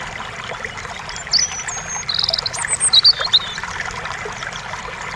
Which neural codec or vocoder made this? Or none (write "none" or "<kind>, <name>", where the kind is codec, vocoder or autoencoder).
none